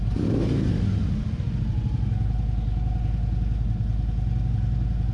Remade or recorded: recorded